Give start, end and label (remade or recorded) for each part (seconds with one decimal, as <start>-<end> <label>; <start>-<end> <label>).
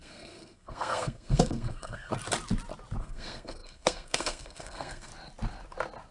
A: 0.0-2.1 remade; 2.1-3.0 recorded; 3.0-5.1 remade; 5.1-6.1 recorded